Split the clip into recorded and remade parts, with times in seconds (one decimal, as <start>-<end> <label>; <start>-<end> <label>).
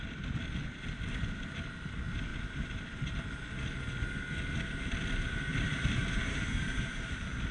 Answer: 0.0-2.3 recorded; 2.3-3.1 remade; 3.1-5.5 recorded; 5.5-7.5 remade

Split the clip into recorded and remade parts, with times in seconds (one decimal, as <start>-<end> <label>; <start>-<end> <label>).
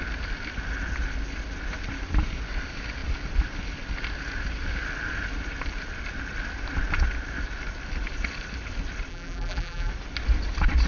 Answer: 0.0-9.1 recorded; 9.1-9.9 remade; 9.9-10.9 recorded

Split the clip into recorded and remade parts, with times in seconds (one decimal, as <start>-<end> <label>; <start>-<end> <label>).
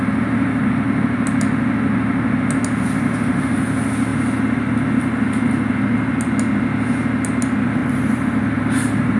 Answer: 0.0-7.8 recorded; 7.8-9.2 remade